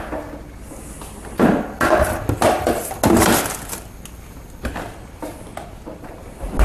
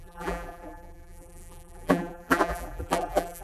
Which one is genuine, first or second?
first